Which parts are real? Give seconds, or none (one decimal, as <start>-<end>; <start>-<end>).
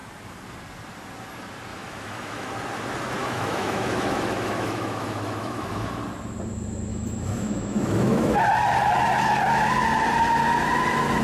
0.0-1.7; 2.5-3.2; 6.0-6.9; 8.3-11.2